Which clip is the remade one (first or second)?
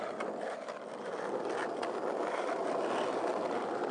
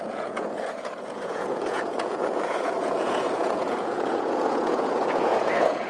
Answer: second